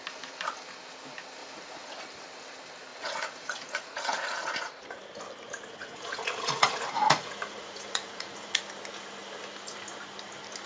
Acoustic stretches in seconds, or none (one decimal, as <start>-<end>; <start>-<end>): 0.0-1.4; 2.0-2.9; 5.1-5.8; 8.6-10.7